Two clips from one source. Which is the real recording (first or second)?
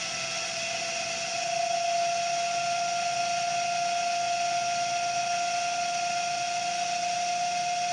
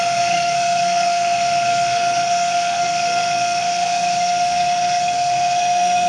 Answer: first